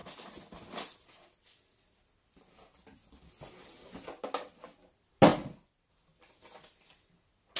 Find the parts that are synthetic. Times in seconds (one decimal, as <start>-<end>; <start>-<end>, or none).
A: none